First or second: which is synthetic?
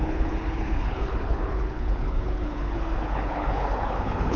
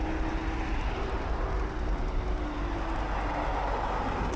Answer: first